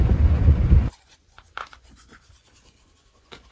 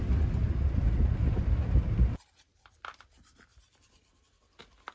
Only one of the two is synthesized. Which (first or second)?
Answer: first